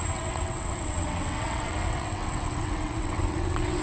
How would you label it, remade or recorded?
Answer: remade